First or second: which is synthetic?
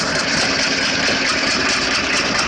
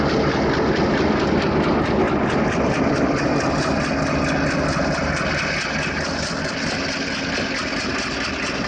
first